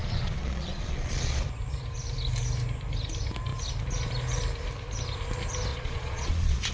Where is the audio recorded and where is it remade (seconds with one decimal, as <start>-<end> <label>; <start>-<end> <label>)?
0.0-1.4 remade; 1.4-5.7 recorded; 5.7-6.7 remade